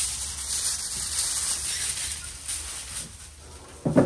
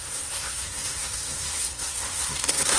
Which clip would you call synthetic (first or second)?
second